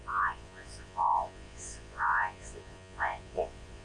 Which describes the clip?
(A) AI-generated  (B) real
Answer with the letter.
A